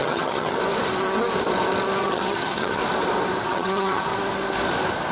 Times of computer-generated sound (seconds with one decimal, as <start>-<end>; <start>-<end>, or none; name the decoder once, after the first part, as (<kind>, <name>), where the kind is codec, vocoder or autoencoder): 0.0-0.6 (vocoder, HiFi-GAN); 2.0-2.8; 3.4-4.1